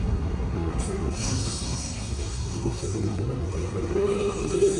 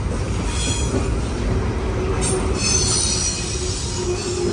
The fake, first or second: first